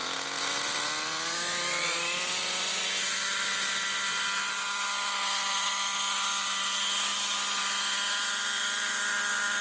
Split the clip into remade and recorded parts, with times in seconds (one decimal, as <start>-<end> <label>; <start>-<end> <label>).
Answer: 0.0-8.2 recorded; 8.2-8.9 remade; 8.9-9.6 recorded